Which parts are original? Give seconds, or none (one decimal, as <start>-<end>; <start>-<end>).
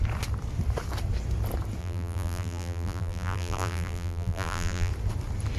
0.0-1.8; 4.9-5.6